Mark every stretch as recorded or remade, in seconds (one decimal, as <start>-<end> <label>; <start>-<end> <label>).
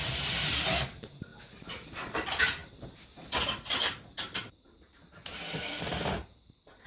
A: 0.0-6.9 remade